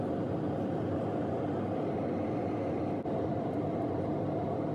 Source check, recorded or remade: recorded